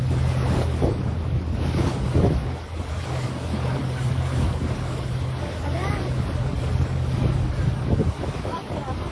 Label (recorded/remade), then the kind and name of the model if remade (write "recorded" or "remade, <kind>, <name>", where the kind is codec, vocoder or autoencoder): remade, codec, DAC